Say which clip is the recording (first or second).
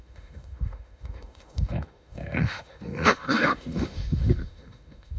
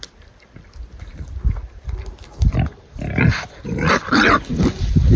second